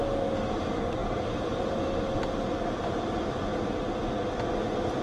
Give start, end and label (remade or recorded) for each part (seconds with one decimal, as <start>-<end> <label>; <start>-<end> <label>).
0.0-1.0 recorded; 1.0-1.5 remade; 1.5-5.0 recorded